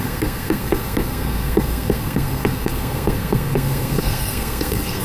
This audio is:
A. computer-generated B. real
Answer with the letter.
A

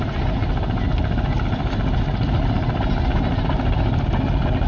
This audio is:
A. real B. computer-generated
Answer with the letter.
A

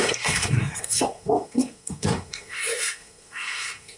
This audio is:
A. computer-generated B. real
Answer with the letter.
A